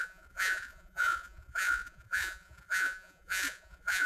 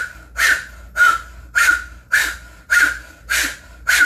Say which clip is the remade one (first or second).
first